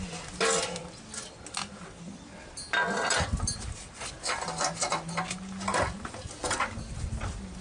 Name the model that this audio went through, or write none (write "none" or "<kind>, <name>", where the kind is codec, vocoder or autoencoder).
none